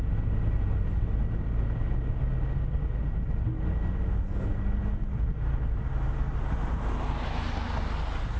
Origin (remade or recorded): recorded